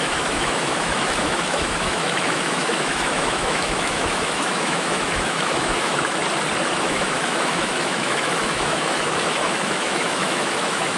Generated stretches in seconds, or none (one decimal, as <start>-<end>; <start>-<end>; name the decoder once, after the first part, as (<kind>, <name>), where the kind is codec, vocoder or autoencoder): 0.0-6.2 (autoencoder, DAC-VAE); 6.8-11.0